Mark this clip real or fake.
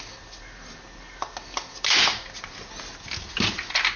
real